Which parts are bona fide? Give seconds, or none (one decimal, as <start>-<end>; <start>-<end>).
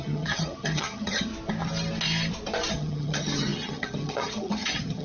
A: 1.3-2.7